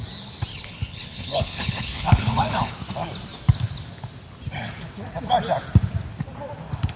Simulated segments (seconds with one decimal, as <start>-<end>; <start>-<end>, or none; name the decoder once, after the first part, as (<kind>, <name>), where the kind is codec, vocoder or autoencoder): 0.5-2.7 (codec, HILCodec)